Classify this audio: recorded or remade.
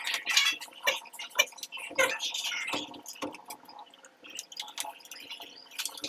recorded